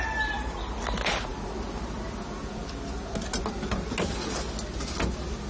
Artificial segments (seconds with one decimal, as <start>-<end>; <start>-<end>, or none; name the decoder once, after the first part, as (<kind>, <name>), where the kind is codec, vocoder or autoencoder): none